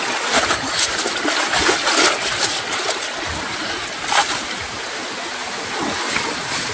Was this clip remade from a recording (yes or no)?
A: no